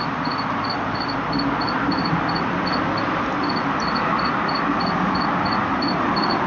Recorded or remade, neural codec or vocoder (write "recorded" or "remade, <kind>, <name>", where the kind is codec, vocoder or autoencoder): recorded